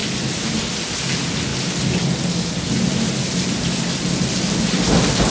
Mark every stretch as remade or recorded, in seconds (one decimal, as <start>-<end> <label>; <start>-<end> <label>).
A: 0.0-5.3 recorded